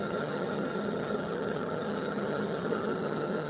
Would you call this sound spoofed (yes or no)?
yes